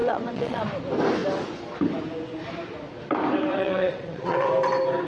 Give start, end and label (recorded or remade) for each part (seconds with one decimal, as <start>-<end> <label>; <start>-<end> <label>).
0.0-0.6 remade; 0.6-3.5 recorded; 3.5-4.5 remade; 4.5-5.1 recorded